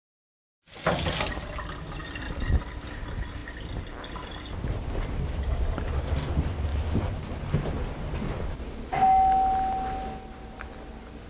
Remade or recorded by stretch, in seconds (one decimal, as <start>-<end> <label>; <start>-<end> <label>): 0.0-2.0 recorded; 2.0-2.6 remade; 2.6-3.4 recorded; 3.4-4.4 remade; 4.4-6.7 recorded; 6.7-8.4 remade; 8.4-11.3 recorded